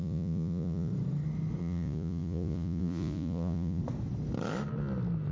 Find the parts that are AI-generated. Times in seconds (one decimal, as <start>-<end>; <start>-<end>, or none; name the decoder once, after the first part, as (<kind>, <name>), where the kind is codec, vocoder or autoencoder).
0.0-0.9 (vocoder, Vocos); 1.6-3.8